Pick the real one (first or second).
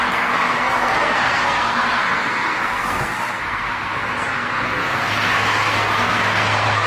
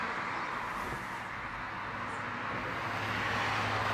second